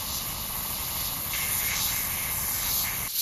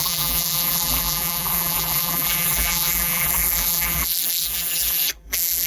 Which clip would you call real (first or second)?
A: first